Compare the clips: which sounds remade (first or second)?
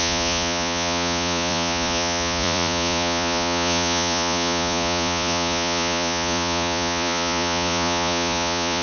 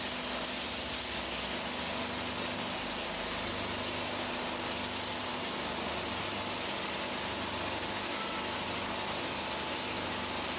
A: first